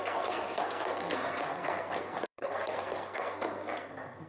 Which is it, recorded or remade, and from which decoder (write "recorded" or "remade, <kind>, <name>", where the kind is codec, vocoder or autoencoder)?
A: remade, codec, SNAC